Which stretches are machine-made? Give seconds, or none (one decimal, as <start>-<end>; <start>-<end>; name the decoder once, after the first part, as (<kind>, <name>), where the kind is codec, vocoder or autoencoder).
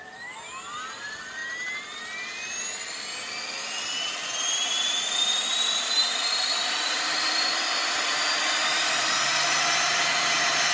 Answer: 4.7-9.6 (vocoder, BigVGAN v2)